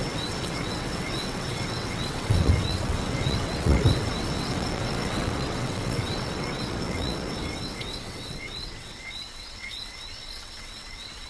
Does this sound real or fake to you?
fake